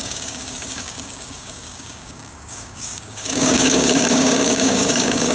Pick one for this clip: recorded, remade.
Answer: remade